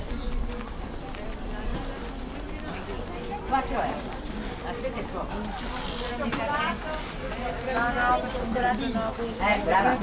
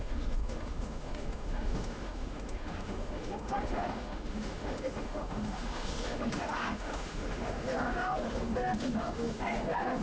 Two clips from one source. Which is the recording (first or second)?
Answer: first